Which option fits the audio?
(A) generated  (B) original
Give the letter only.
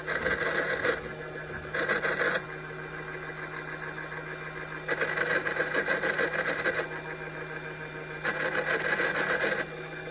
B